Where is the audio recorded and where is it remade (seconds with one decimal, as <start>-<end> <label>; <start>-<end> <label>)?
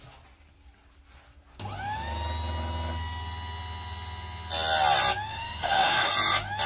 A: 0.0-5.3 recorded; 5.3-6.1 remade; 6.1-6.7 recorded